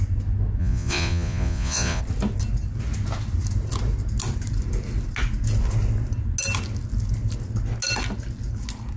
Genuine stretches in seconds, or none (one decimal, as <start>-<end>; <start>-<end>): 0.0-0.6; 2.0-9.0

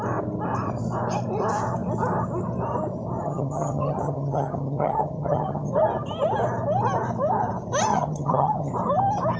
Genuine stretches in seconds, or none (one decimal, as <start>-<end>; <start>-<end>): 0.0-3.2; 5.7-7.9; 8.7-9.4

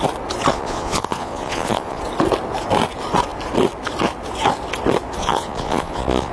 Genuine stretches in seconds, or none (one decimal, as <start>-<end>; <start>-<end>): 0.0-0.5; 2.0-5.2

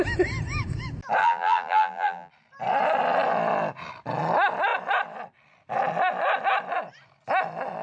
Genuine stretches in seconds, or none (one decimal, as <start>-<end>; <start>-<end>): 0.0-1.2; 2.3-7.8

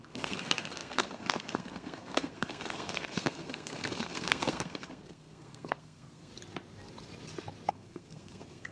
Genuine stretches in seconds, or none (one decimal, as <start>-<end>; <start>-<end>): 6.3-7.7

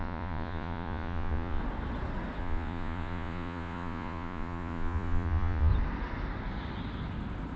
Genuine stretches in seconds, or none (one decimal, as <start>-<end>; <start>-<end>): 1.6-2.4; 5.7-7.6

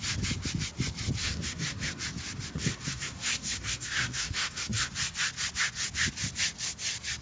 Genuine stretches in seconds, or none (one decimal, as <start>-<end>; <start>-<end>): 0.0-1.2; 2.0-2.5; 4.9-7.2